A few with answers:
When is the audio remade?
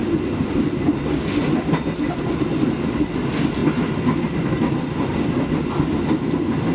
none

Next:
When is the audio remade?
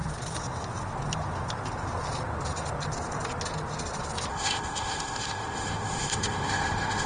4.3-7.1 (autoencoder, DAC-VAE)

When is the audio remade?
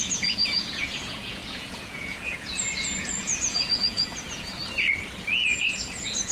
0.0-4.6 (vocoder, Vocos); 5.3-6.3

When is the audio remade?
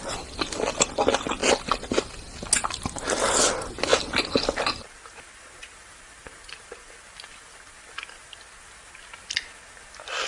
none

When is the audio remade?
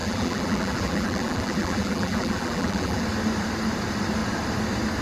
0.0-3.0 (vocoder, BigVGAN v2)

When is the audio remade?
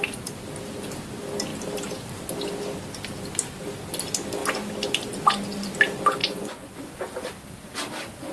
6.2-6.8 (vocoder, Vocos)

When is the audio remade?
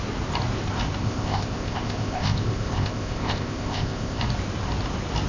1.0-4.2 (codec, ZipCodec)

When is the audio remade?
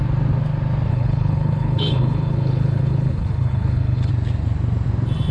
0.9-4.1 (codec, HILCodec)